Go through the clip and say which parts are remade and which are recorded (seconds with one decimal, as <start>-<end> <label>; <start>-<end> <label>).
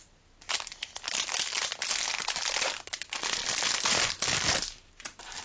0.0-5.4 recorded